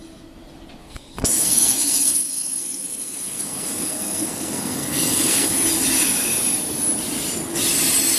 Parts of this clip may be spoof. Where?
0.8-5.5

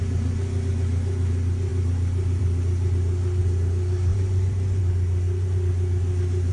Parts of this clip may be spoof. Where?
4.1-4.8